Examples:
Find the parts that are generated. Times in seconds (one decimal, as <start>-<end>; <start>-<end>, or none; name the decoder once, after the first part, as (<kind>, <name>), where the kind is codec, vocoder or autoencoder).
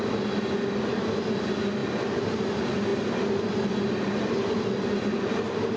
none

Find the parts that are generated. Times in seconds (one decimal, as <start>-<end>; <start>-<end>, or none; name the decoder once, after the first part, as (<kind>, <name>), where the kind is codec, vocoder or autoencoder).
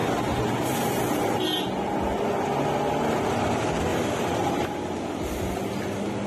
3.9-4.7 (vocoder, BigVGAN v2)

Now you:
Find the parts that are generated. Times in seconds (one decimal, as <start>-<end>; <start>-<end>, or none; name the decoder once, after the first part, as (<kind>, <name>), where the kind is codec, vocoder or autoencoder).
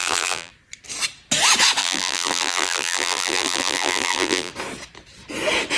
0.0-0.5 (vocoder, BigVGAN v2); 1.8-4.5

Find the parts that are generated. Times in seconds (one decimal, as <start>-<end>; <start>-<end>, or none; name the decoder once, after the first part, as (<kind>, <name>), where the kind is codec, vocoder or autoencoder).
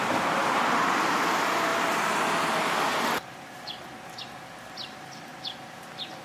0.4-1.1 (vocoder, BigVGAN v2)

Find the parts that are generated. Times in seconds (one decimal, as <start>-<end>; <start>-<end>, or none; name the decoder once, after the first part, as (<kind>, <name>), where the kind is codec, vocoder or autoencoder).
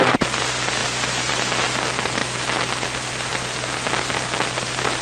none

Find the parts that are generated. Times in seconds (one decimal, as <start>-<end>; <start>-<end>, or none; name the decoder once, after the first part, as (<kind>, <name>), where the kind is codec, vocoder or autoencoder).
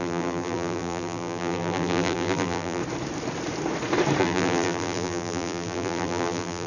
0.0-2.8 (vocoder, BigVGAN v2); 4.2-6.7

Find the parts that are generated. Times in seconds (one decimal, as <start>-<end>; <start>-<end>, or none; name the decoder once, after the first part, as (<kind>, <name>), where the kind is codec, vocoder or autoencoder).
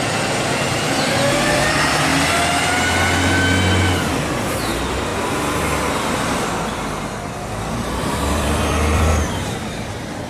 0.0-2.1 (vocoder, BigVGAN v2); 4.4-5.1; 5.9-10.3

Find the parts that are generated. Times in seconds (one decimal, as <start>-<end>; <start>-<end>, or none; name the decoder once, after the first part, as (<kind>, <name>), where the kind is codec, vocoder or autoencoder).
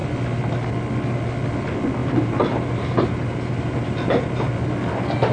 2.0-4.5 (vocoder, BigVGAN v2)